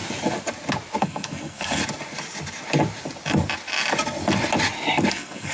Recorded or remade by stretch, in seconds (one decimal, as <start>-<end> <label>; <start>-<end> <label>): 0.0-1.0 recorded; 1.0-1.8 remade; 1.8-5.1 recorded; 5.1-5.5 remade